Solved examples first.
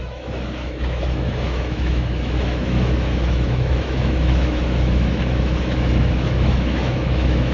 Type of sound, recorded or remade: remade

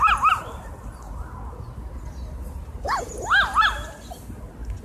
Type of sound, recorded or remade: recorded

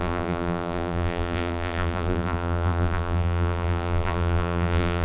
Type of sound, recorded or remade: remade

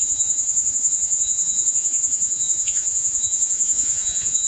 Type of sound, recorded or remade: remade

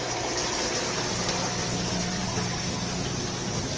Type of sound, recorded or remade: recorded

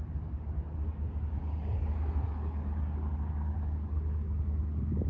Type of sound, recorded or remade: remade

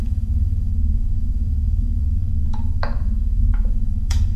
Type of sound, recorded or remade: remade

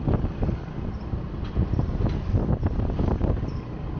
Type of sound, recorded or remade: recorded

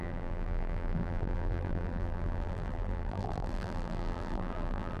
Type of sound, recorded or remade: remade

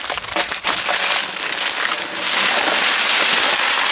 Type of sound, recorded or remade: recorded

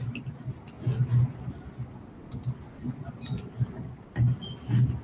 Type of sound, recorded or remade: recorded